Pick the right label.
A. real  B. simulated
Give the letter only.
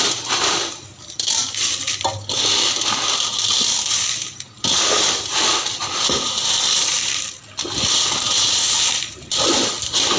A